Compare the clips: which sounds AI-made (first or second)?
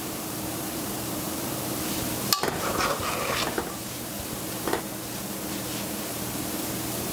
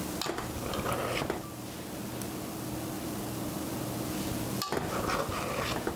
first